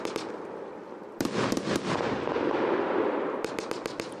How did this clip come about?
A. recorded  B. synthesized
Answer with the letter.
A